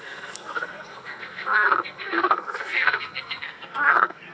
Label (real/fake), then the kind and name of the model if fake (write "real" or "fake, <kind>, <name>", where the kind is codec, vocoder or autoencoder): fake, codec, SNAC